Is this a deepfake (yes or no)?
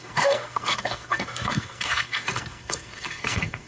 yes